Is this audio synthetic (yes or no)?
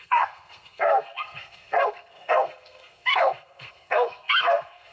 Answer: yes